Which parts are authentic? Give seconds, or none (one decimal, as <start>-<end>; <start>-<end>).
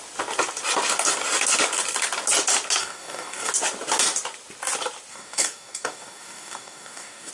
0.0-2.8; 3.5-5.1